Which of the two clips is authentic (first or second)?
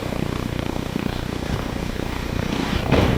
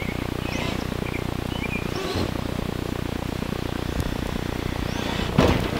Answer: second